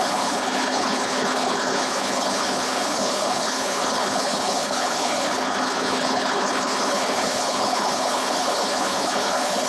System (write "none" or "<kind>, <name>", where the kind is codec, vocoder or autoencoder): codec, HILCodec